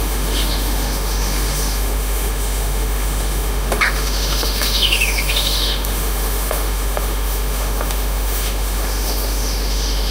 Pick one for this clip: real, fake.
fake